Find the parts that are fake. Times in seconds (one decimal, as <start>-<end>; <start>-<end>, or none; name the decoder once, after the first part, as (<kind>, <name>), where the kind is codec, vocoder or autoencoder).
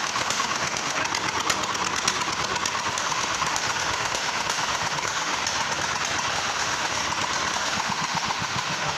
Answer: 0.0-1.0 (autoencoder, DAC-VAE); 2.9-5.4; 6.3-7.0; 7.5-9.0